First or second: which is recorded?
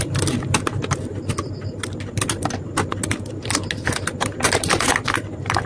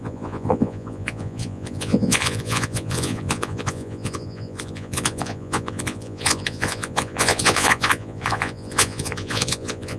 first